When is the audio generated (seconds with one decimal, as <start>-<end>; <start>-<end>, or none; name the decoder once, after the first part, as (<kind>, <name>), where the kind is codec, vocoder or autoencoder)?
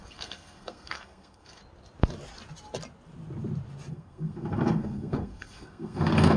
0.0-1.6 (codec, SNAC); 3.9-6.4